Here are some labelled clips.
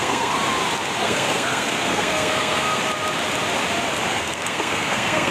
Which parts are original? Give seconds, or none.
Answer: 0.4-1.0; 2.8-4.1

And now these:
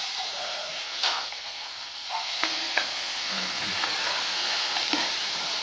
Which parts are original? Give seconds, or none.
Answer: 0.0-0.8; 3.7-4.2; 4.8-5.6

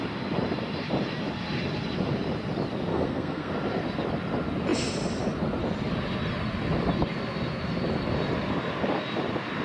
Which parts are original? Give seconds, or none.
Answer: 0.0-2.9; 3.5-9.6

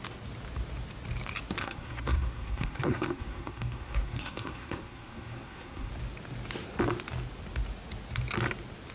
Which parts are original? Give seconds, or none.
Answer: 0.0-1.6; 5.9-8.9

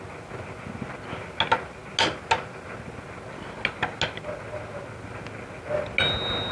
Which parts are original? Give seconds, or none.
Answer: 0.0-6.5